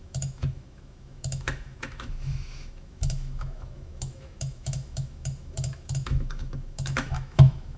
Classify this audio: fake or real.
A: fake